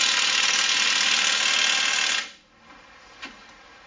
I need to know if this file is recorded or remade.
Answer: recorded